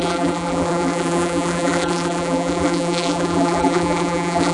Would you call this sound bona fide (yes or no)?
no